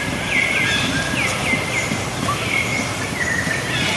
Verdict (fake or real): real